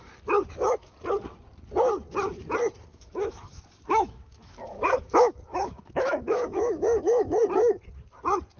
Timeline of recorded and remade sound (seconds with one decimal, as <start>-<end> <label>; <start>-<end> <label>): 0.0-2.9 recorded; 2.9-7.4 remade; 7.4-8.6 recorded